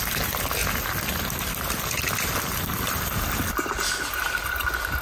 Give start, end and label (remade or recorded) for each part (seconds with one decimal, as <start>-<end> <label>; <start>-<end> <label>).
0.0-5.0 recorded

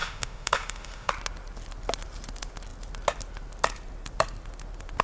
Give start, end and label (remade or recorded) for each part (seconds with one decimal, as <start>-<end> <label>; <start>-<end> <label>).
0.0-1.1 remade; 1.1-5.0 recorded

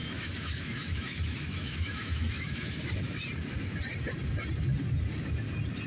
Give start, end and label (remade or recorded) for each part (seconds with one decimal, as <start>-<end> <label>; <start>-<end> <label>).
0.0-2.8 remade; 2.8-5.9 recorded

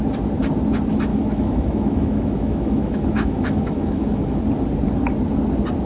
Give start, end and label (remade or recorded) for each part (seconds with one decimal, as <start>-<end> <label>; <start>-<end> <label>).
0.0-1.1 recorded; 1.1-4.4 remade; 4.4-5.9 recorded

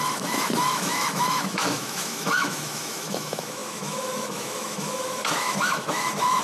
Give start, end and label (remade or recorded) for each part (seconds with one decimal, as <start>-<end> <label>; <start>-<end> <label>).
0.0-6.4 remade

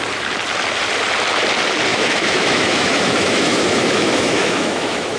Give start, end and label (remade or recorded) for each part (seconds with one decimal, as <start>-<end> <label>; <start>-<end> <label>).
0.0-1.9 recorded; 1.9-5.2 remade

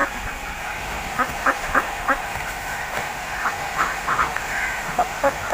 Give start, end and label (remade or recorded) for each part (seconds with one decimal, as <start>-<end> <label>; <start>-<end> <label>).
0.0-0.6 recorded; 0.6-5.5 remade

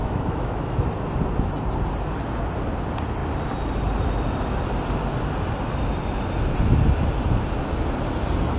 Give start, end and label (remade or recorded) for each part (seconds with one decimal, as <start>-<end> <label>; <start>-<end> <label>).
0.0-0.9 remade; 0.9-8.6 recorded